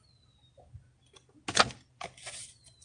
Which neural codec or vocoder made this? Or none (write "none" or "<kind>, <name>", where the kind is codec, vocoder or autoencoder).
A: none